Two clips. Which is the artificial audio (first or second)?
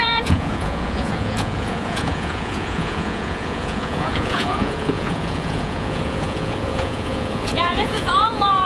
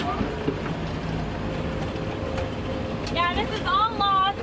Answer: first